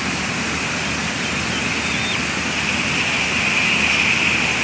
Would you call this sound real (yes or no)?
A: yes